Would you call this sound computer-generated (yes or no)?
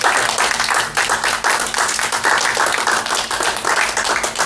no